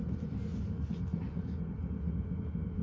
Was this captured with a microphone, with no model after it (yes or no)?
yes